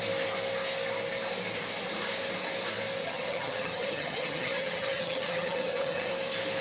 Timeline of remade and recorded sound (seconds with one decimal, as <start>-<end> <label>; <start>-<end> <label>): 0.0-3.0 recorded; 3.0-6.1 remade; 6.1-6.6 recorded